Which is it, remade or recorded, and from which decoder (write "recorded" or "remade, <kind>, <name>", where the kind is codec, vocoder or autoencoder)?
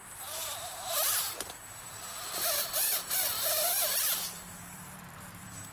remade, vocoder, BigVGAN v2